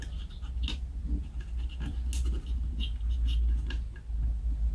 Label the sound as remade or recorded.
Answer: recorded